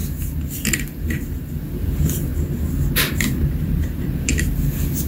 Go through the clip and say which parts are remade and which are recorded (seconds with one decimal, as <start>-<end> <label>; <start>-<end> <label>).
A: 0.0-1.0 recorded; 1.0-2.3 remade; 2.3-3.1 recorded; 3.1-4.3 remade; 4.3-5.1 recorded